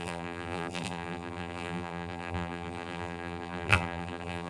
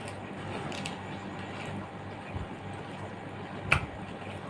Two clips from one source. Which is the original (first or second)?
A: second